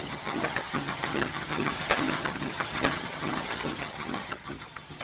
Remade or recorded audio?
remade